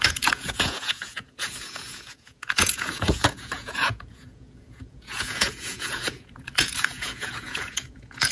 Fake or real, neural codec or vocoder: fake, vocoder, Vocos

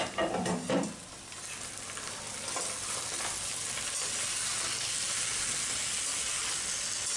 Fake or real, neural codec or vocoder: real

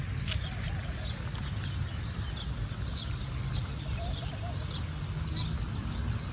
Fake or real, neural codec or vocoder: real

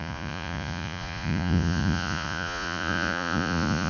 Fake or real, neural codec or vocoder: fake, vocoder, Vocos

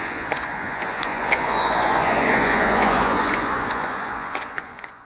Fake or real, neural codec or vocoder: fake, vocoder, Vocos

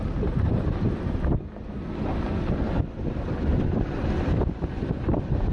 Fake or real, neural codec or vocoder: real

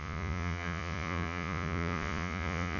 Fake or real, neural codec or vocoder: fake, vocoder, Vocos